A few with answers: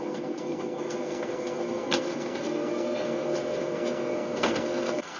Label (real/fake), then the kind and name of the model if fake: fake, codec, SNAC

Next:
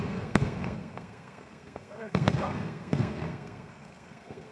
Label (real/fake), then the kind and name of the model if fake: fake, codec, SNAC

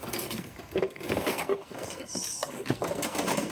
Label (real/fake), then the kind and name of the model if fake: fake, codec, SNAC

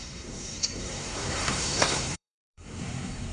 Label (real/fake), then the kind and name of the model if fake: fake, codec, SNAC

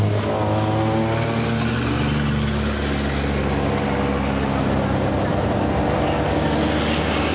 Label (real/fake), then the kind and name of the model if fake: real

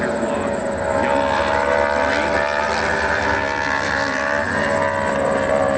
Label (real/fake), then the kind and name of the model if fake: real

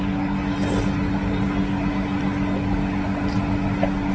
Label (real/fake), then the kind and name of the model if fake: real